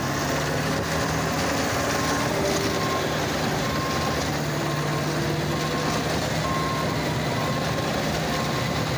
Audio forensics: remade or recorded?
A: recorded